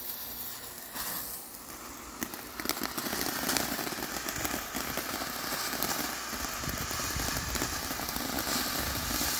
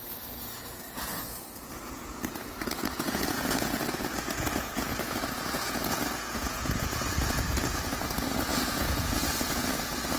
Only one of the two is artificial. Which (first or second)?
second